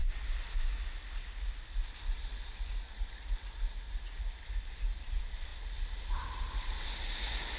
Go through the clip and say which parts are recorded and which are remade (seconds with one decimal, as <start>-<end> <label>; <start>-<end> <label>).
0.0-7.6 recorded